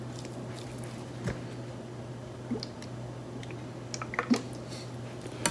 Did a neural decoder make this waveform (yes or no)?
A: no